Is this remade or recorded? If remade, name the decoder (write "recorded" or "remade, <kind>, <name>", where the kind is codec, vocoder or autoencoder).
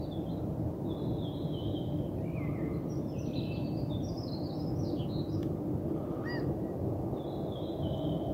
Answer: recorded